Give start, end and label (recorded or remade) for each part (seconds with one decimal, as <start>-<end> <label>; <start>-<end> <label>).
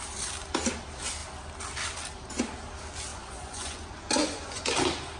0.0-3.1 recorded; 3.1-4.6 remade; 4.6-5.2 recorded